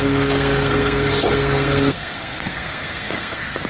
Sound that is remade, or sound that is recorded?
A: remade